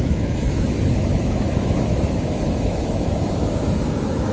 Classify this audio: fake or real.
fake